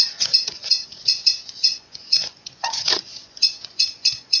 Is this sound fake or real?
fake